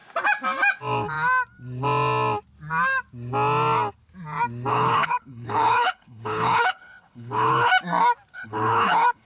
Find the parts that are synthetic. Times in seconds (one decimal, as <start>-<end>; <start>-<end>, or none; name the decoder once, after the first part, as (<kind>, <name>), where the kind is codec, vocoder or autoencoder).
4.7-7.7 (codec, HILCodec); 8.3-9.3